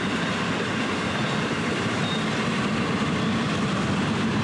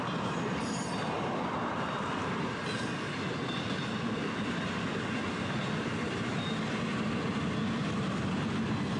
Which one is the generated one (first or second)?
first